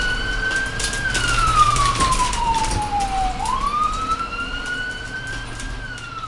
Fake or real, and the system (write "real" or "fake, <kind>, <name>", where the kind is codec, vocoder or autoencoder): fake, vocoder, BigVGAN v2